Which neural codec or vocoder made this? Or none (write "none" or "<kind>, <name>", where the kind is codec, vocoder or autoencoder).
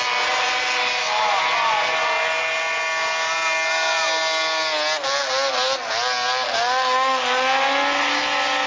none